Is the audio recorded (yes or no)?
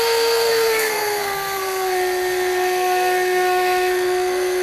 no